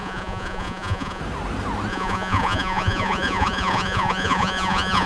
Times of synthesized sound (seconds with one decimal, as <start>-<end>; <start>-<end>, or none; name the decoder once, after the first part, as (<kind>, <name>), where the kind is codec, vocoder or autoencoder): 0.0-1.2 (vocoder, Vocos); 1.9-5.1

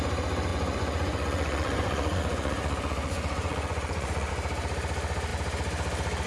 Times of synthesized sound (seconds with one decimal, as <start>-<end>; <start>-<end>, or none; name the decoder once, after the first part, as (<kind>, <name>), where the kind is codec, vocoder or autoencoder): 0.5-4.3 (vocoder, Vocos)

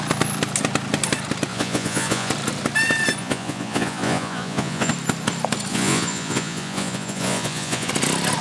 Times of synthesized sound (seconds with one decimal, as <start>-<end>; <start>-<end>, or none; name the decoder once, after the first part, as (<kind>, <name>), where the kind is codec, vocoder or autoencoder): 1.5-2.3 (vocoder, Vocos); 3.2-4.9; 5.7-7.9

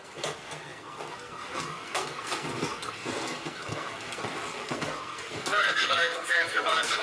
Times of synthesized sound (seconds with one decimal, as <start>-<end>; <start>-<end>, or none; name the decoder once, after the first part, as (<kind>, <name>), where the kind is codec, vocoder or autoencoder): 0.0-7.0 (codec, SNAC)

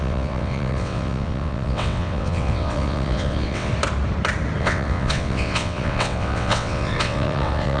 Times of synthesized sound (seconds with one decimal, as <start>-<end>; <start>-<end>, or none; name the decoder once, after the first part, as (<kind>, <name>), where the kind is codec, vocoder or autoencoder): 0.0-3.7 (vocoder, WaveNeXt); 4.6-7.8

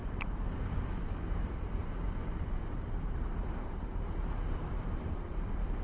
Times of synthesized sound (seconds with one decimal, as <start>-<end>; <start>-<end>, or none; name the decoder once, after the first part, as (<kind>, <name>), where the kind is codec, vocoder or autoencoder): 1.8-5.3 (vocoder, BigVGAN v2)